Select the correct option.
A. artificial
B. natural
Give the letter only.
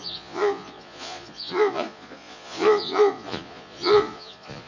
A